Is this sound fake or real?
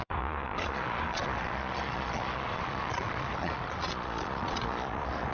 fake